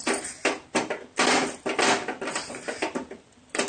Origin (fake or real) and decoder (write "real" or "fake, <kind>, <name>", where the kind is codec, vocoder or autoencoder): real